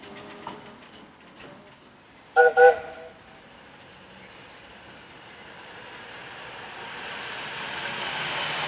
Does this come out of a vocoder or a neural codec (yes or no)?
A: no